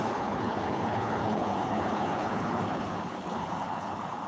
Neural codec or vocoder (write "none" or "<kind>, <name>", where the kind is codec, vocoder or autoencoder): codec, HILCodec